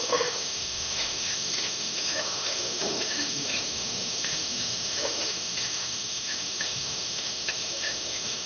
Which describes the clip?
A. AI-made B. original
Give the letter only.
A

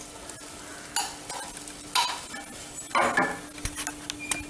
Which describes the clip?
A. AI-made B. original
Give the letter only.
B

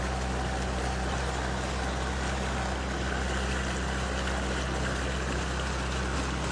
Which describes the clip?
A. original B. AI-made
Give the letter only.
A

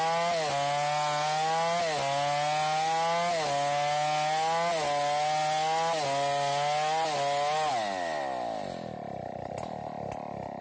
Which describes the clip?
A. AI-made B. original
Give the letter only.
B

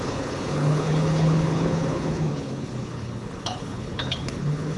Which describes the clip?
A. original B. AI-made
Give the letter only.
B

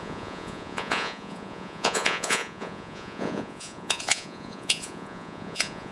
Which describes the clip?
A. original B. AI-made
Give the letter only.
B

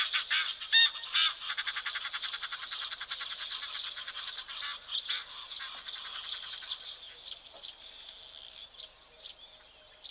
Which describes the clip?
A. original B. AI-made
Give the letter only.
A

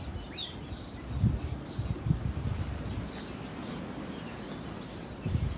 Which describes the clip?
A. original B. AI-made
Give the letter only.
A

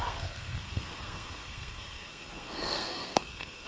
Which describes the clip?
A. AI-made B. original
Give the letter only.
A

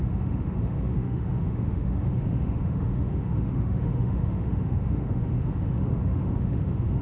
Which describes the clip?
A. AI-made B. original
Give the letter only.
A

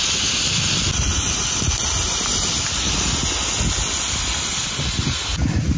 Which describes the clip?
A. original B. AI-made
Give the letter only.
A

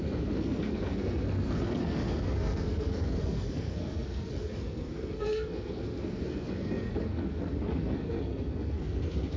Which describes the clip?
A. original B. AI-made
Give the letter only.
B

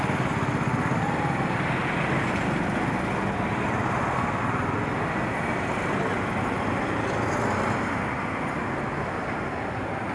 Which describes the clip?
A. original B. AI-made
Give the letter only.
A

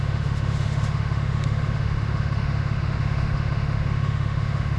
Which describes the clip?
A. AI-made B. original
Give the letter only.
A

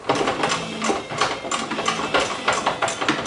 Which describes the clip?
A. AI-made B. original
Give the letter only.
B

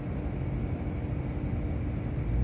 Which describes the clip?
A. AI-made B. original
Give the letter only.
B